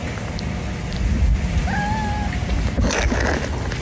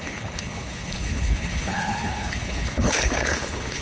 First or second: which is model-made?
second